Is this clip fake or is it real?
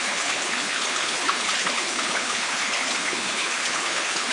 fake